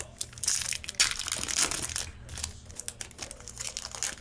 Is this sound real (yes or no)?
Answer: yes